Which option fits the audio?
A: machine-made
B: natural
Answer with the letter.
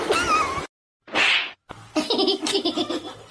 B